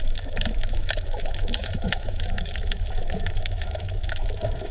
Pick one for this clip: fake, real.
fake